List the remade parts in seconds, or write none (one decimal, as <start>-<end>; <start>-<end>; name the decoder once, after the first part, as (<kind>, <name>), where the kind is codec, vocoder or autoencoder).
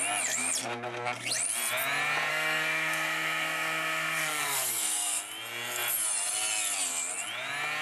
2.3-5.2 (codec, SNAC)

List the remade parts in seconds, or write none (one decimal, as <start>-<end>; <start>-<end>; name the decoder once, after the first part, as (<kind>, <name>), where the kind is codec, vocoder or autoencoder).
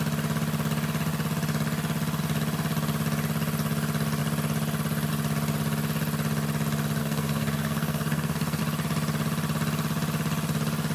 7.0-8.6 (codec, SNAC)